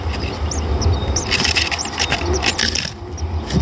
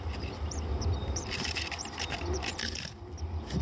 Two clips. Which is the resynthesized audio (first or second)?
second